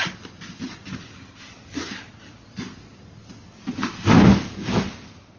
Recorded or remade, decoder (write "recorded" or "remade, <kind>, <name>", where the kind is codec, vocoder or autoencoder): recorded